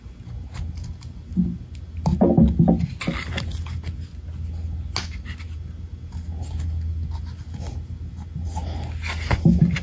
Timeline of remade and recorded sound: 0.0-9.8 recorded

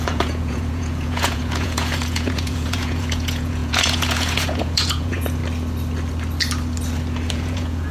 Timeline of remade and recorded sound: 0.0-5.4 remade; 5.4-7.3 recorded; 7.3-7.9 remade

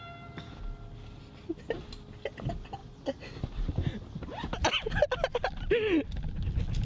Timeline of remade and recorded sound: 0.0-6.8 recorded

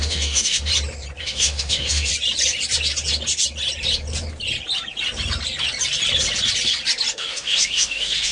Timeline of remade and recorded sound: 0.0-0.7 remade; 0.7-1.2 recorded; 1.2-2.1 remade; 2.1-7.1 recorded; 7.1-8.3 remade

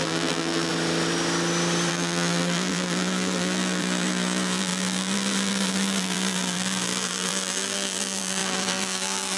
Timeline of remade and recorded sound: 0.0-0.7 remade; 0.7-1.9 recorded; 1.9-9.4 remade

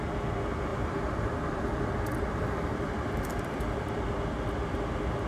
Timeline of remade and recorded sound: 0.0-0.7 recorded; 0.7-3.9 remade; 3.9-5.3 recorded

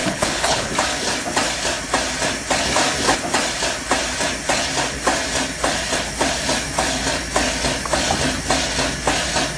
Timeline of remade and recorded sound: 0.0-0.7 remade; 0.7-9.6 recorded

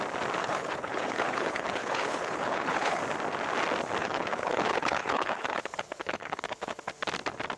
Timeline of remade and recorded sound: 0.0-0.4 recorded; 0.4-3.0 remade; 3.0-4.0 recorded; 4.0-6.9 remade; 6.9-7.6 recorded